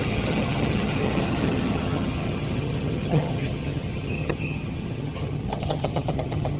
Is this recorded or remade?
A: remade